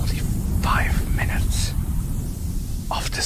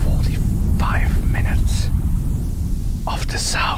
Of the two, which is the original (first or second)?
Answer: second